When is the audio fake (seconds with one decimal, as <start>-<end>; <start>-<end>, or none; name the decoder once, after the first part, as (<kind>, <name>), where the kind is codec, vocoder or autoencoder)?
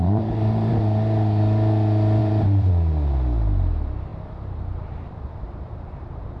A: 0.0-0.7 (vocoder, BigVGAN v2); 2.2-2.7; 4.1-6.4